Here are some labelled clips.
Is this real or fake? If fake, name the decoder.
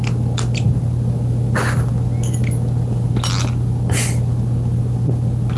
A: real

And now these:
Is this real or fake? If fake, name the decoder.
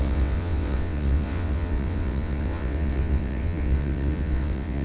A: fake, vocoder, WaveNeXt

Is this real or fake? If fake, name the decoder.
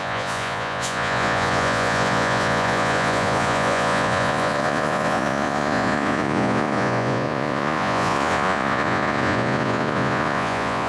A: fake, vocoder, Vocos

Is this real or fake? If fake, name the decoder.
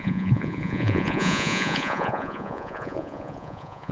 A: fake, vocoder, Vocos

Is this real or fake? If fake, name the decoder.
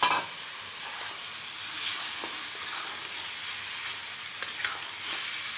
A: real